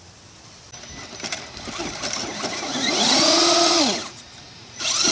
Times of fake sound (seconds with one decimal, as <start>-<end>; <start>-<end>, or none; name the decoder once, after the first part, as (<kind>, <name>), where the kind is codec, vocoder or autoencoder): 2.5-5.1 (vocoder, Vocos)

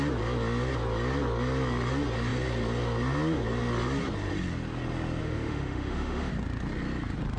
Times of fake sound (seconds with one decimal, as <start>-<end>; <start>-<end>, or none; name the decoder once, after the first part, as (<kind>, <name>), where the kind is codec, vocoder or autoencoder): 5.2-6.3 (autoencoder, DAC-VAE)